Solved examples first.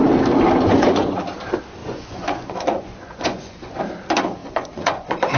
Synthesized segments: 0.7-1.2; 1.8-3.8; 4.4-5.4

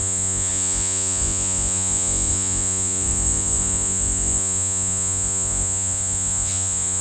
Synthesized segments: 0.0-7.0

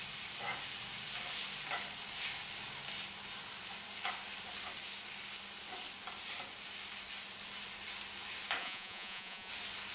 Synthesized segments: 8.6-9.5